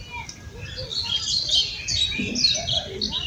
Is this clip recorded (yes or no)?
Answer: yes